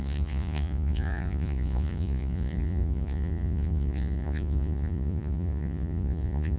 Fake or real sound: fake